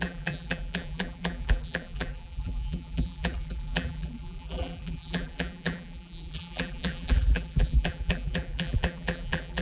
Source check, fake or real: fake